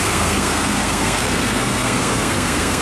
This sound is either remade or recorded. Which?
remade